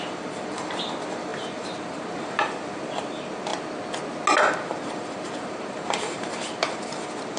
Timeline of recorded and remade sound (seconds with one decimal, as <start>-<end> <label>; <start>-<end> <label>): 0.0-3.5 remade; 3.5-4.4 recorded; 4.4-7.4 remade